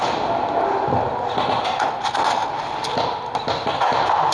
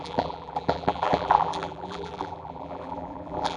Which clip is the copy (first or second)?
second